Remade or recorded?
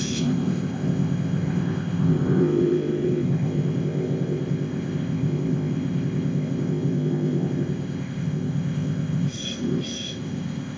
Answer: remade